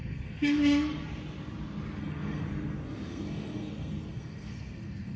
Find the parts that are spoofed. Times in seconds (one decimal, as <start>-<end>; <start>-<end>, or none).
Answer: 0.0-1.0; 2.0-5.2